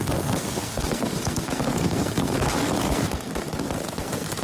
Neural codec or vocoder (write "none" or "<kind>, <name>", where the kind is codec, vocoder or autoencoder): codec, SNAC